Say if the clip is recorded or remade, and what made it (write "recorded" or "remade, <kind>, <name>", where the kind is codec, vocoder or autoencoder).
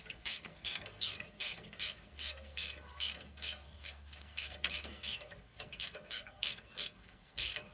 remade, codec, SNAC